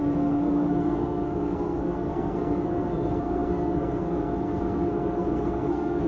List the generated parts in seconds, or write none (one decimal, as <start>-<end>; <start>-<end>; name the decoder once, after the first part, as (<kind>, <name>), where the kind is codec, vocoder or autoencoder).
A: 0.0-6.1 (codec, SNAC)